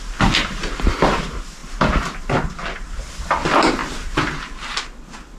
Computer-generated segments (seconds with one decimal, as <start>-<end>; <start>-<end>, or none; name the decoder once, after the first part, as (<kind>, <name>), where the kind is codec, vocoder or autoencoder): 0.0-1.6 (vocoder, BigVGAN v2); 2.2-3.8; 4.4-5.4